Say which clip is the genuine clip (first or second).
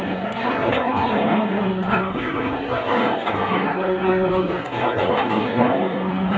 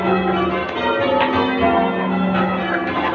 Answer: second